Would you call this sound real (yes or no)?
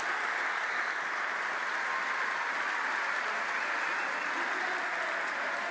yes